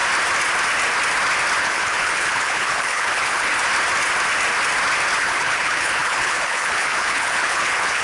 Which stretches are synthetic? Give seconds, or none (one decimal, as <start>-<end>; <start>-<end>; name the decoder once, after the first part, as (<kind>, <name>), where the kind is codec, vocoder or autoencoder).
1.6-3.5 (codec, HILCodec); 5.2-8.0